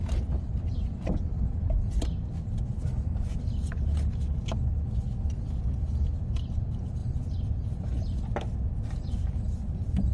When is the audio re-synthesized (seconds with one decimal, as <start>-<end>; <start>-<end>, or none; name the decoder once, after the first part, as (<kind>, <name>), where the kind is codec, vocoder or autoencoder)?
7.0-7.7 (vocoder, BigVGAN v2)